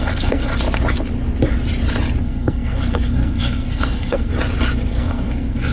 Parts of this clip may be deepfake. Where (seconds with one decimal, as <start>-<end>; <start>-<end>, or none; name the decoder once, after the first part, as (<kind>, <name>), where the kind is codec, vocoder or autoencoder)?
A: 0.0-0.5 (codec, SNAC); 2.2-4.3; 4.9-5.7